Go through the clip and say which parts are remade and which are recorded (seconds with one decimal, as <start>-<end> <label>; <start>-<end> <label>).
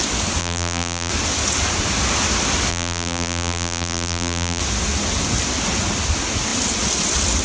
0.0-0.4 recorded; 0.4-1.1 remade; 1.1-2.7 recorded; 2.7-4.6 remade; 4.6-7.4 recorded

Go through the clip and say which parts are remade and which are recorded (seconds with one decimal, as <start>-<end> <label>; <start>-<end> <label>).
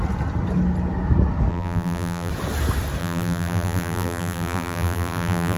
0.0-1.5 recorded; 1.5-2.3 remade; 2.3-3.0 recorded; 3.0-5.6 remade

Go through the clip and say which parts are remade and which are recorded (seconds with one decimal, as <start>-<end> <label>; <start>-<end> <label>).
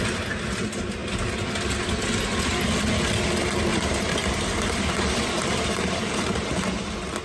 0.0-3.7 recorded; 3.7-6.7 remade; 6.7-7.2 recorded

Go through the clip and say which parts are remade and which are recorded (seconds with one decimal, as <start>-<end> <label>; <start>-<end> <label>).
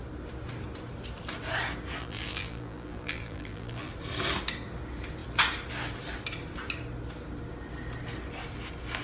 0.0-2.0 recorded; 2.0-3.9 remade; 3.9-9.0 recorded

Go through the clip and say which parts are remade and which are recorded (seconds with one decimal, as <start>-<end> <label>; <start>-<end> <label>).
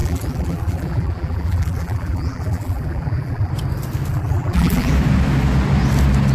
0.0-3.5 remade; 3.5-4.1 recorded; 4.1-4.9 remade; 4.9-6.3 recorded